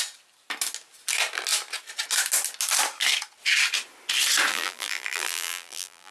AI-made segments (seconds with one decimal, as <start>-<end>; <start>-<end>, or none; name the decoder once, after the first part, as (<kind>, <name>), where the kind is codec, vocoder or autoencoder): 4.5-6.1 (vocoder, BigVGAN v2)

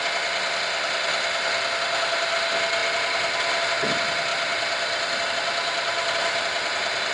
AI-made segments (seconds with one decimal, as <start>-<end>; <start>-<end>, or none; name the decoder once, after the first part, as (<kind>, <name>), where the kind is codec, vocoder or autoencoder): none

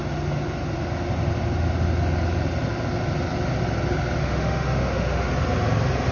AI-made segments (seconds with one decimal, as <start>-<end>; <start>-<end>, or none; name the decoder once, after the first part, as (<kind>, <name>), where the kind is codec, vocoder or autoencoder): 4.2-5.3 (autoencoder, DAC-VAE)

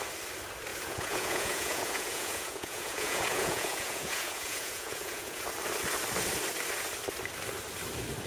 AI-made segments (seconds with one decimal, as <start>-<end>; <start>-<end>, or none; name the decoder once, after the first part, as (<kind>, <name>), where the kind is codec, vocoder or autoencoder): 0.7-5.4 (vocoder, Vocos)

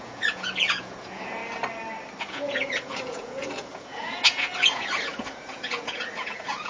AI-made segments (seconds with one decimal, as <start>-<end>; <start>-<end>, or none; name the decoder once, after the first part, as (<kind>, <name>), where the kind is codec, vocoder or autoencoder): 0.0-1.4 (vocoder, Vocos); 2.2-6.7

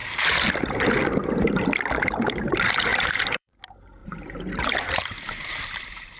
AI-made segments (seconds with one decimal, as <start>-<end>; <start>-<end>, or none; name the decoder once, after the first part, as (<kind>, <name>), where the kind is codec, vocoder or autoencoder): 0.0-0.5 (vocoder, BigVGAN v2); 2.9-3.6; 4.0-5.5

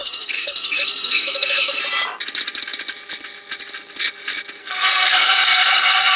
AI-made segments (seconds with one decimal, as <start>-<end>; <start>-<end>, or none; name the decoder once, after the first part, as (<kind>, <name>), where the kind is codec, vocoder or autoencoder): 0.0-1.8 (codec, SNAC); 4.6-6.2

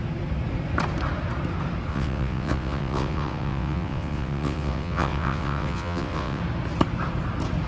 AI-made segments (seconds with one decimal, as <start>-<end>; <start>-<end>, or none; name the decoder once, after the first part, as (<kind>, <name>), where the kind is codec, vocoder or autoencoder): 1.9-6.4 (vocoder, WaveNeXt)